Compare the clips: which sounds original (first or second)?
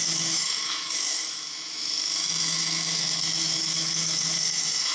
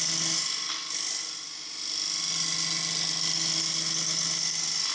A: second